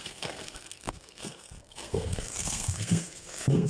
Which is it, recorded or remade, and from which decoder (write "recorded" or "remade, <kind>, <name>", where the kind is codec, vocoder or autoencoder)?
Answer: remade, codec, SNAC